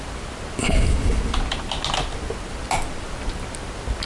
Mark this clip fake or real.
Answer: real